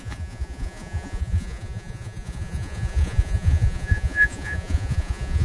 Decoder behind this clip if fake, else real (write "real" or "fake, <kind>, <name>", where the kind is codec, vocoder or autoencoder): fake, vocoder, Vocos